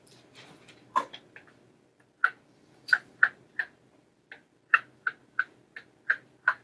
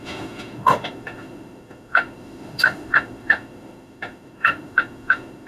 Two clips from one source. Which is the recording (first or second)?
first